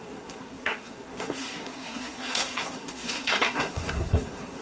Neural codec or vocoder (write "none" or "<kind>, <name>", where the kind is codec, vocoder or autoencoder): codec, SNAC